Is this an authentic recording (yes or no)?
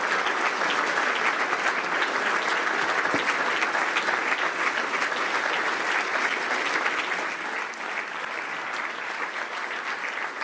yes